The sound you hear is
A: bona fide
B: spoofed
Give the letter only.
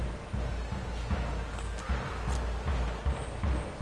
A